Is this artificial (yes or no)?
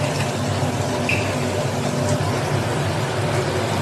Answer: no